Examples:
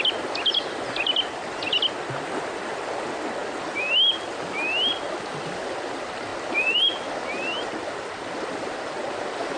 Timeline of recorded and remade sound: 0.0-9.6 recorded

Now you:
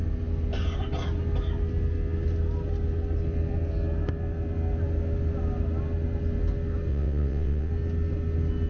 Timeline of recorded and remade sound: 0.0-6.9 recorded; 6.9-7.7 remade; 7.7-8.7 recorded

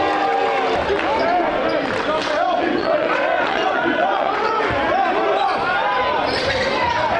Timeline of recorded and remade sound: 0.0-2.2 recorded; 2.2-4.6 remade; 4.6-7.2 recorded

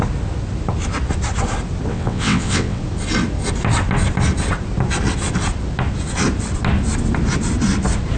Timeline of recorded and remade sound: 0.0-1.9 recorded; 1.9-2.8 remade; 2.8-8.2 recorded

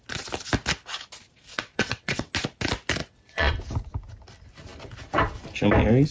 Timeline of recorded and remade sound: 0.0-1.5 recorded; 1.5-2.3 remade; 2.3-3.0 recorded; 3.0-3.5 remade; 3.5-6.1 recorded

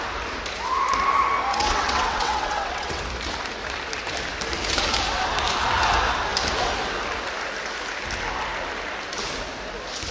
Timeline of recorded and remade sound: 0.0-1.5 recorded; 1.5-3.0 remade; 3.0-10.1 recorded

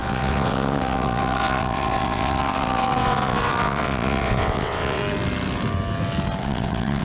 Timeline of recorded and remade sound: 0.0-5.0 remade; 5.0-6.4 recorded; 6.4-7.0 remade

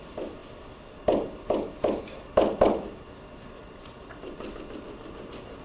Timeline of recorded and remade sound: 0.0-5.6 recorded